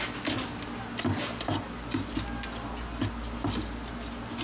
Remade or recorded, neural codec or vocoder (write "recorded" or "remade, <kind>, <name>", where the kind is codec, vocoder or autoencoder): recorded